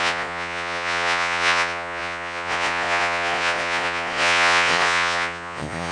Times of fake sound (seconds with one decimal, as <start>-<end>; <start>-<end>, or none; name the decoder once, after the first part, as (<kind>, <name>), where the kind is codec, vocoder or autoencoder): 0.0-5.9 (vocoder, Vocos)